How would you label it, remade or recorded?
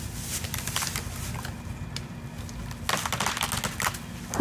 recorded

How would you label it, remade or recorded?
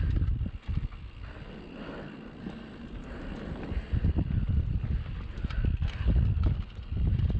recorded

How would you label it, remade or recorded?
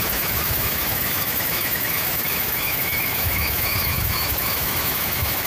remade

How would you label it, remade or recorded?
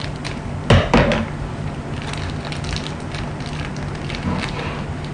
recorded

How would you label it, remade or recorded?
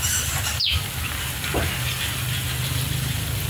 recorded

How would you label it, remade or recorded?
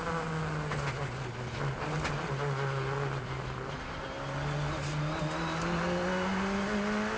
recorded